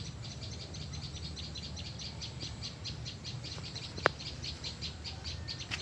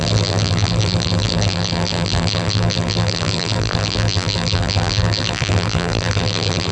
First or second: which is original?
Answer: first